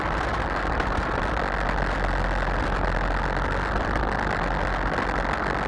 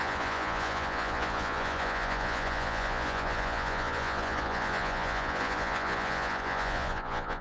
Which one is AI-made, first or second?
second